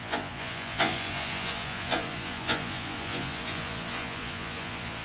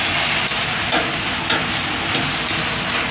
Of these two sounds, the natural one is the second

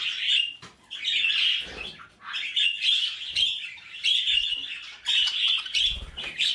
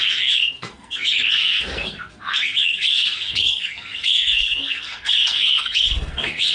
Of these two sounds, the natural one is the first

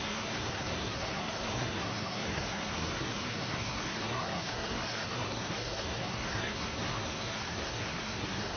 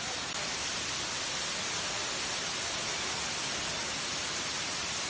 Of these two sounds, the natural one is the second